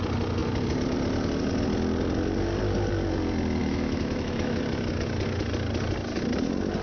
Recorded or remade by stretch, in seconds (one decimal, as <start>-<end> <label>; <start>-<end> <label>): 0.0-3.6 recorded; 3.6-4.6 remade; 4.6-6.8 recorded